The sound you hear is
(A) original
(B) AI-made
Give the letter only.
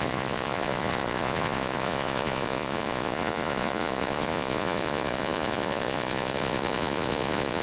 B